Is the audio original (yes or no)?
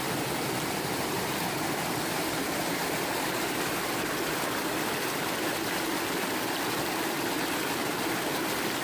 yes